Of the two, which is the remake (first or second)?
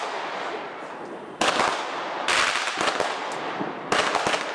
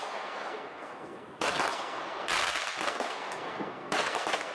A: second